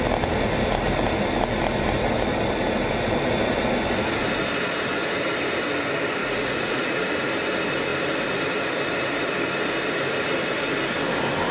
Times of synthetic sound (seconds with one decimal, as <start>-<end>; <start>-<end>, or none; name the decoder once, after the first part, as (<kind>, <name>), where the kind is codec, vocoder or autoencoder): 6.2-7.3 (vocoder, Vocos)